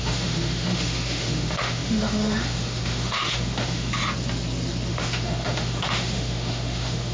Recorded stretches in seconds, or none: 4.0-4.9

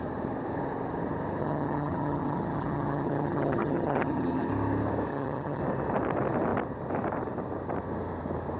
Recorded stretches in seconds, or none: 0.0-1.4; 4.5-5.1; 5.6-8.6